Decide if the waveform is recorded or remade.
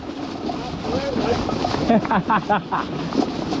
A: recorded